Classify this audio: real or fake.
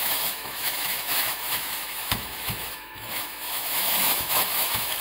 fake